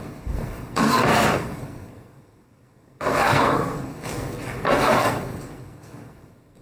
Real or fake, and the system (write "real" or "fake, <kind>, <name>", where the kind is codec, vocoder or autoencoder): fake, codec, SNAC